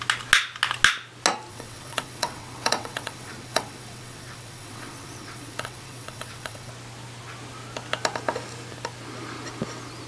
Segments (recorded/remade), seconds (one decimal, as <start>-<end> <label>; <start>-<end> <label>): 0.0-1.5 recorded; 1.5-6.7 remade; 6.7-10.1 recorded